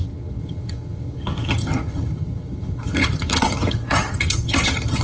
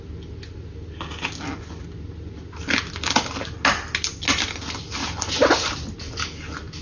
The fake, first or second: first